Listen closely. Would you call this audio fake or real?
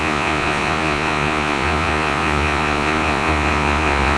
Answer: fake